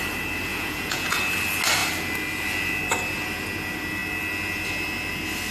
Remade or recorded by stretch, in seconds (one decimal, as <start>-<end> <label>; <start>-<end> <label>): 0.0-0.5 recorded; 0.5-1.2 remade; 1.2-5.5 recorded